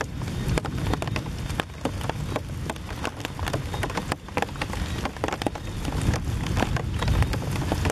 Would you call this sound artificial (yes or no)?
no